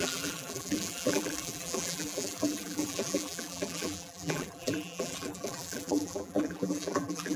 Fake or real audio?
fake